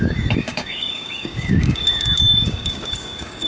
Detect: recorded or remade remade